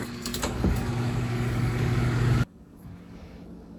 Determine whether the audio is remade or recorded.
remade